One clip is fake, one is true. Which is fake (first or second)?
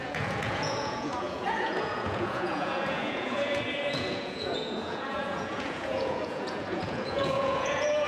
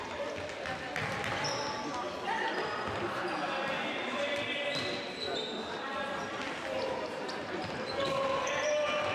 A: first